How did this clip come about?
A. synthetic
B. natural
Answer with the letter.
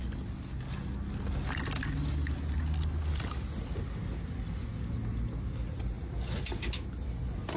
B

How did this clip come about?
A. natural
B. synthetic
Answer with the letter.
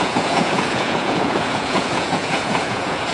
B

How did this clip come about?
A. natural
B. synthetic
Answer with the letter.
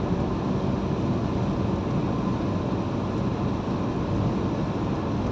A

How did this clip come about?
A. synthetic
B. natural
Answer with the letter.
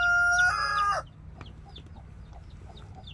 B